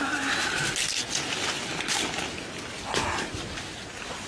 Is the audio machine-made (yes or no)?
no